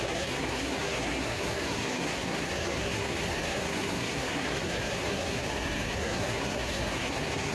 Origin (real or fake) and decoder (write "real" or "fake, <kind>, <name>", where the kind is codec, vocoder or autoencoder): fake, codec, SNAC